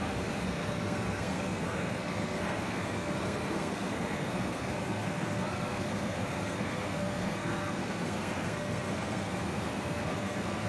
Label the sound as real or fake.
fake